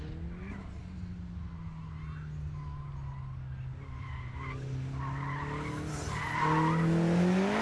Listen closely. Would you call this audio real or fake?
real